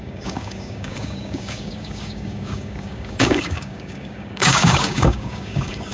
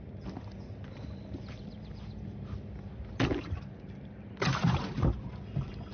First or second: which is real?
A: second